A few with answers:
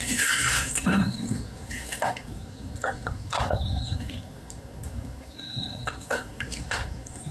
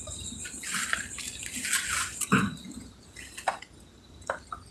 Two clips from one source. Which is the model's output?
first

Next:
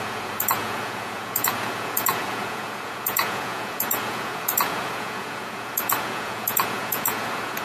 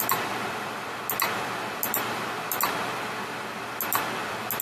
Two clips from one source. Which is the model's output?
first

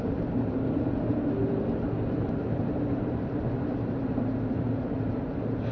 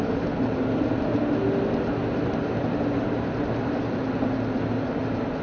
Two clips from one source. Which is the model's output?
first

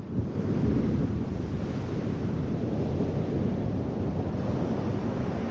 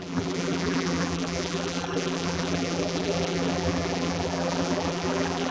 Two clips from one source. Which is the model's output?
second